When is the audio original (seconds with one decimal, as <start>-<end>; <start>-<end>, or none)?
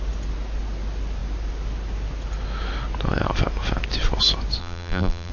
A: 0.0-4.6